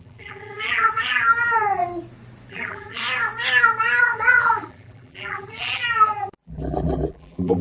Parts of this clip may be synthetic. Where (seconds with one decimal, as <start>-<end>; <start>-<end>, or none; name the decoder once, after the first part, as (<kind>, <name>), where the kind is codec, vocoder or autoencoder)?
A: 0.0-1.8 (vocoder, BigVGAN v2); 2.5-3.0; 4.0-7.6